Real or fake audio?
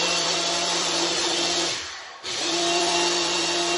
fake